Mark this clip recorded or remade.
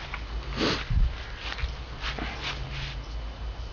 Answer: recorded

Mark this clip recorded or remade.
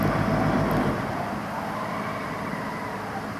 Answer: recorded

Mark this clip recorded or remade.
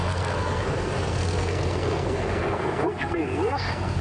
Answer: remade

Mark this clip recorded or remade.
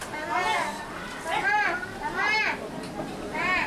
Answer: recorded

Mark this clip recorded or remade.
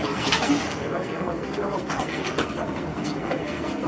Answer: remade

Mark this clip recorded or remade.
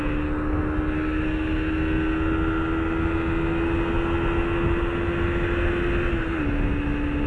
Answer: recorded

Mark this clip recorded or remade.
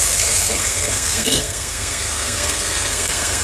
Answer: remade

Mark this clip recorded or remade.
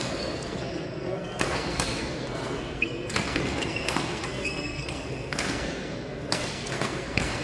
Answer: remade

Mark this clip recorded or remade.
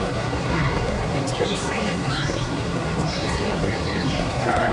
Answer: remade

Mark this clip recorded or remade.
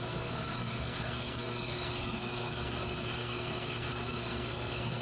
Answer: remade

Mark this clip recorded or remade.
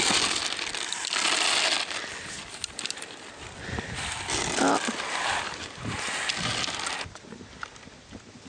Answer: recorded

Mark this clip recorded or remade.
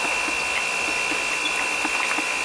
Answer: recorded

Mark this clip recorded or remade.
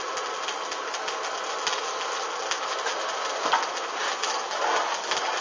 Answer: recorded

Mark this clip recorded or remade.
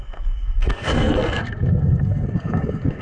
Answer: remade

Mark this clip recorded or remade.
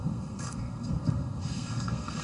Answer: remade